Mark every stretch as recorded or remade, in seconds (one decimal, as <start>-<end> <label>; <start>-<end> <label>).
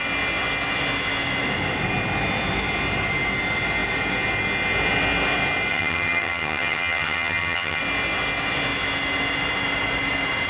0.0-5.7 recorded; 5.7-7.8 remade; 7.8-10.5 recorded